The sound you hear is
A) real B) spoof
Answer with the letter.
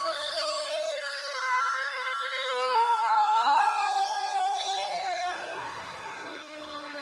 B